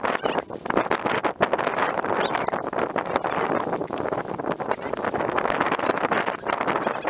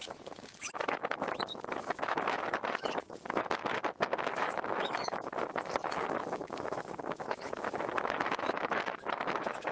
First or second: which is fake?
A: second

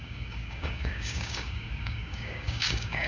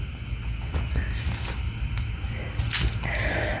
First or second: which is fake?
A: first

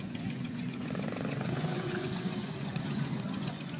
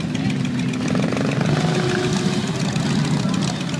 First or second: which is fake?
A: first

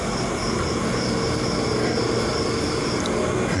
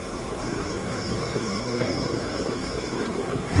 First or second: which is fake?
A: second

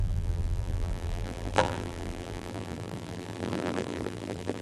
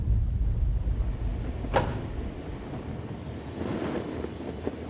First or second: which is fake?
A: first